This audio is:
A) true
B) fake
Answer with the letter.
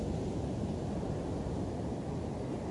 A